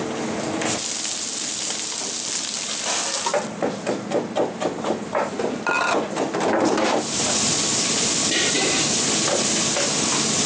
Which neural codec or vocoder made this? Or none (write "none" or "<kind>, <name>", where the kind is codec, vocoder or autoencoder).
none